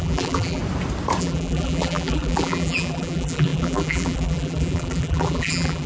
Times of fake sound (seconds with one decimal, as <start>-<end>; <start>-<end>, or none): 0.0-0.6; 1.2-5.9